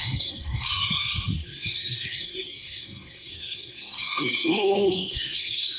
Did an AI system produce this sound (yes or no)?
yes